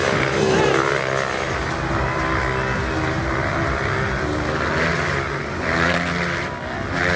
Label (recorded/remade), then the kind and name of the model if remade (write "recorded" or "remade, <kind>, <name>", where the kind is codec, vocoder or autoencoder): recorded